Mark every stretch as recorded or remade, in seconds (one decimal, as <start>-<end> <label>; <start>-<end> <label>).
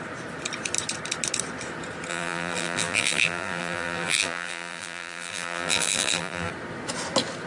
0.0-2.1 recorded; 2.1-6.5 remade; 6.5-7.5 recorded